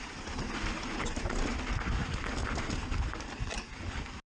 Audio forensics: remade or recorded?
recorded